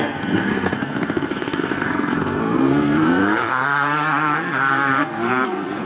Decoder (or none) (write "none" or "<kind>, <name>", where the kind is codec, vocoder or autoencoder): codec, SNAC